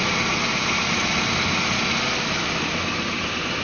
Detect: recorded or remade recorded